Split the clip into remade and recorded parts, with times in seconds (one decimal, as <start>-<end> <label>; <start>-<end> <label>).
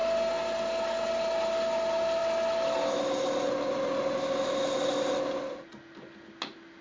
0.0-6.8 recorded